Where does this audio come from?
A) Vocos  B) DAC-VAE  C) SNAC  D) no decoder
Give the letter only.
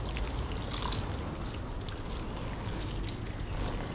D